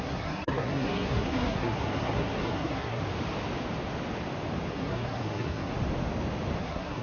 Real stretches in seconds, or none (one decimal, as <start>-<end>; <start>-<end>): 3.0-4.7; 5.7-6.6

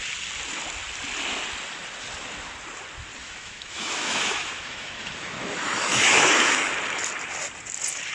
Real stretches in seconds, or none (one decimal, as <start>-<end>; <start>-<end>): 0.0-3.2; 6.7-8.1

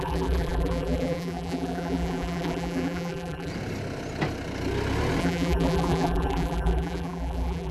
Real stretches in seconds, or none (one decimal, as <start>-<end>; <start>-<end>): 3.5-5.2

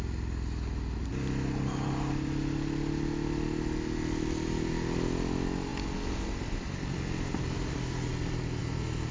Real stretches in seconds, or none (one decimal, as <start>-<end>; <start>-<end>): 0.0-9.1